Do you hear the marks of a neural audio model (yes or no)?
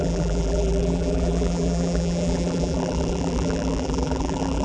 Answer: yes